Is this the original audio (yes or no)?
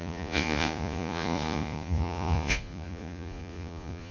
no